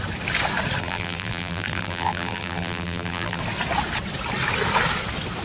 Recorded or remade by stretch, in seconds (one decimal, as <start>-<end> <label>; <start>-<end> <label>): 0.0-0.8 recorded; 0.8-3.4 remade; 3.4-5.4 recorded

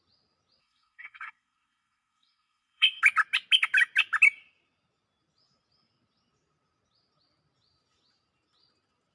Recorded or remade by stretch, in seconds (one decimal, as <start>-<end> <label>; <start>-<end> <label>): 0.0-0.6 recorded; 0.6-3.0 remade; 3.0-9.1 recorded

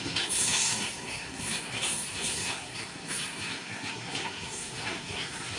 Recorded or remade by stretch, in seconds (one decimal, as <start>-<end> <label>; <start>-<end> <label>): 0.0-5.6 remade

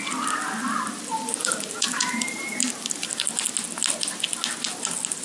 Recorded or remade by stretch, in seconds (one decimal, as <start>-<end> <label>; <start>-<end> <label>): 0.0-1.1 recorded; 1.1-3.1 remade; 3.1-5.2 recorded

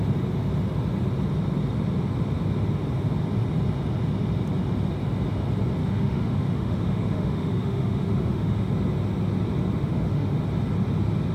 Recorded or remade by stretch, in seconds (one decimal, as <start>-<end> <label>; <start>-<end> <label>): 0.0-5.8 recorded; 5.8-8.7 remade; 8.7-9.8 recorded; 9.8-10.4 remade; 10.4-11.3 recorded